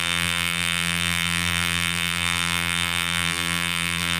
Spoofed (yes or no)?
yes